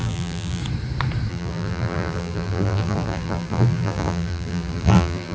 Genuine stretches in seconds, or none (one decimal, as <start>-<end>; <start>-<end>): 0.6-1.3